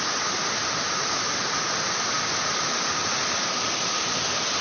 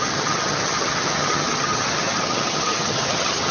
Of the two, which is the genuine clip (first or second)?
first